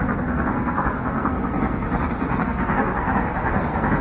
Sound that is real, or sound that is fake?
fake